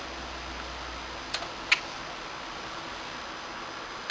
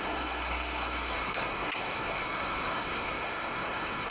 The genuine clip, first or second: first